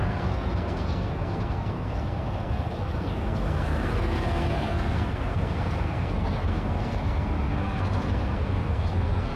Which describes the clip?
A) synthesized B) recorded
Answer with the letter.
A